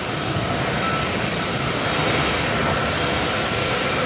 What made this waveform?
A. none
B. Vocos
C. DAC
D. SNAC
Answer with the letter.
A